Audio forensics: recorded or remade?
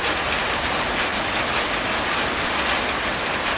recorded